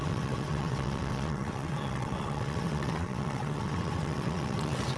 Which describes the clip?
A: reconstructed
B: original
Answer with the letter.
A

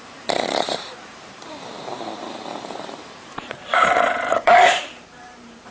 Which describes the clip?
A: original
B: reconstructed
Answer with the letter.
B